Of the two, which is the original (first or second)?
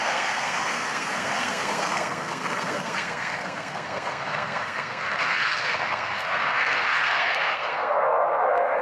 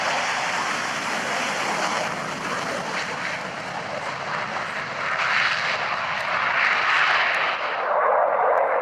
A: second